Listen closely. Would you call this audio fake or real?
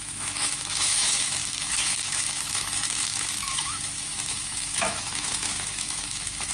fake